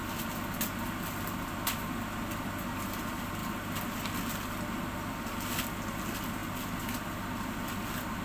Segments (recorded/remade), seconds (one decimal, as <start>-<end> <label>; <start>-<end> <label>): 0.0-8.2 recorded